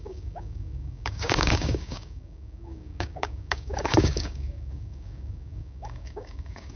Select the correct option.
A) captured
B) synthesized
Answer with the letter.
B